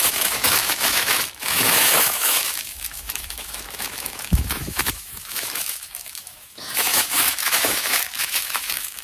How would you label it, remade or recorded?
remade